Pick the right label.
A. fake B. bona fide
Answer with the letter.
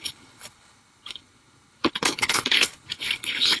A